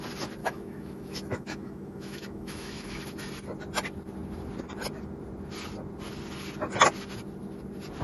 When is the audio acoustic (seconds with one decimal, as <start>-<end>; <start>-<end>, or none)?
0.0-0.4; 3.0-8.0